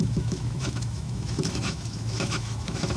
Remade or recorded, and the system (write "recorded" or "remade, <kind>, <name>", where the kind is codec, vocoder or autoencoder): remade, autoencoder, DAC-VAE